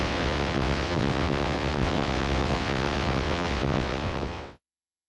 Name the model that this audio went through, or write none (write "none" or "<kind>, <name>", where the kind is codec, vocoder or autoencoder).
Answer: vocoder, WaveNeXt